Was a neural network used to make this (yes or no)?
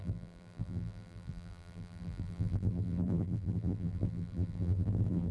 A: yes